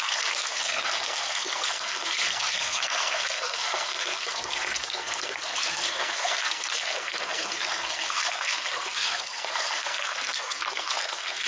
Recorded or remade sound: remade